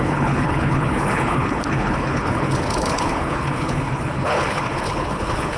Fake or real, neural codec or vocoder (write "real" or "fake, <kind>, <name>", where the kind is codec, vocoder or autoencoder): fake, codec, HILCodec